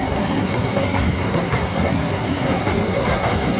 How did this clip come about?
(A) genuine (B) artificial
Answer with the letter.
B